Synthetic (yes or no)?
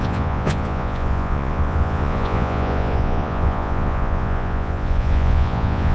yes